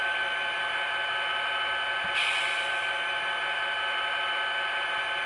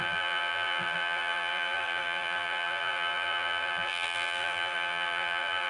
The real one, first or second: first